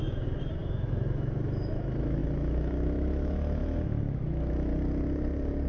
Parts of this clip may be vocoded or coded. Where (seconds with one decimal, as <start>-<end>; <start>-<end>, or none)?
0.0-4.7